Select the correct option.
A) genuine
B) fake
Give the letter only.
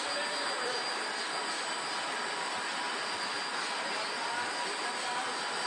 A